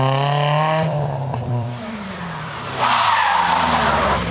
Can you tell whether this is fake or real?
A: fake